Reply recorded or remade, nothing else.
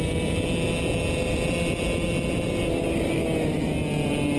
recorded